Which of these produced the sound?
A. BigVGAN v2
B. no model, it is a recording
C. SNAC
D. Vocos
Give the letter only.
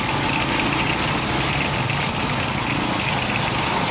B